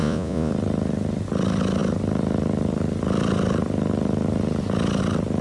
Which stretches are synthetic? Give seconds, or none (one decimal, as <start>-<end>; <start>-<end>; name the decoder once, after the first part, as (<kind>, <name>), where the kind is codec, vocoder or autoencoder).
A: 0.0-0.5 (vocoder, Vocos)